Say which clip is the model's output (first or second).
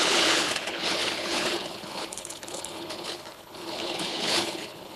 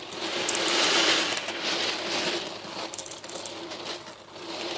first